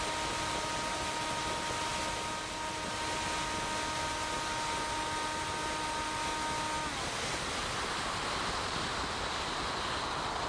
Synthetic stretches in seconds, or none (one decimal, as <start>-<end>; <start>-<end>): none